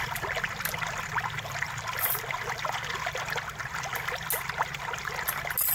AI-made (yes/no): no